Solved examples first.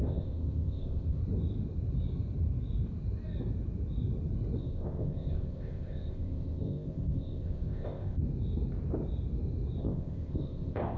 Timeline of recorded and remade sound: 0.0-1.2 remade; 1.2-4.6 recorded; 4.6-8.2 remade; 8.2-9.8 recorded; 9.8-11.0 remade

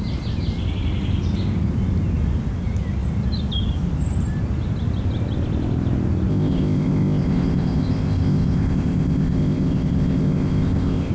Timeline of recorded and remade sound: 0.0-6.3 recorded; 6.3-11.1 remade